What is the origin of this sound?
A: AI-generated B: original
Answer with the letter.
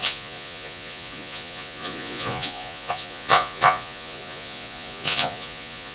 A